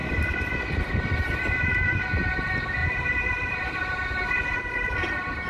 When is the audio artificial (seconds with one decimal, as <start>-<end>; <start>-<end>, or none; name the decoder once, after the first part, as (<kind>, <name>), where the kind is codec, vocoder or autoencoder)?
2.8-4.7 (vocoder, BigVGAN v2)